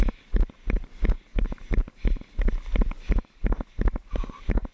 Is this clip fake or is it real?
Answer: fake